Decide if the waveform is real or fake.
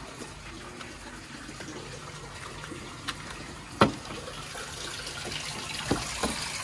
real